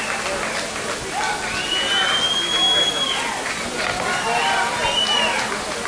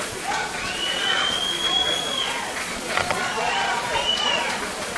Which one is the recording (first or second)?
first